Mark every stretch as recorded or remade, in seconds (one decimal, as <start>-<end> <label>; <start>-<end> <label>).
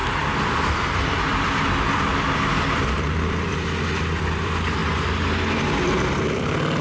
0.0-0.7 recorded; 0.7-4.8 remade; 4.8-5.4 recorded; 5.4-6.8 remade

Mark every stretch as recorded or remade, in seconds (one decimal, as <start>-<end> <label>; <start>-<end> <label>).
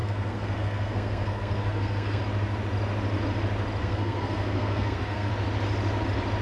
0.0-2.2 remade; 2.2-3.8 recorded; 3.8-5.3 remade; 5.3-6.4 recorded